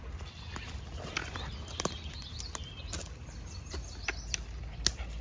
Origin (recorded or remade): recorded